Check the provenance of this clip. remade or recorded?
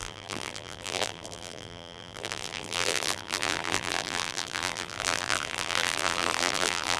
remade